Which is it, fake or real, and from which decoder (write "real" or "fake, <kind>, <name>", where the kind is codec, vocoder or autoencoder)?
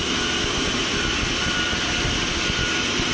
real